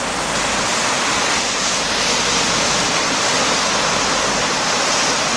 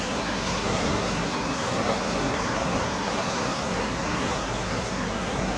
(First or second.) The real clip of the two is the first